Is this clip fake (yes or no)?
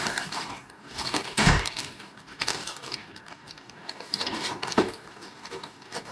yes